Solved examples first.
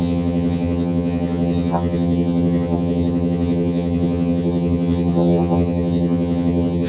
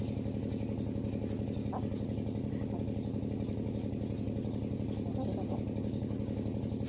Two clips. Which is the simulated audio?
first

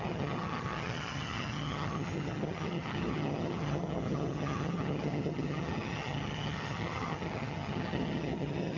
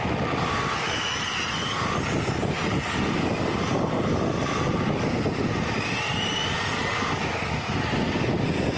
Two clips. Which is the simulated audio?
first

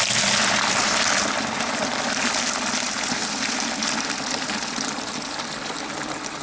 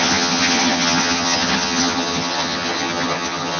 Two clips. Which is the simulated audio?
second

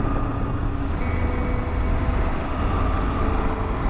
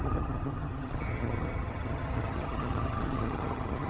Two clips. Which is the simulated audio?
second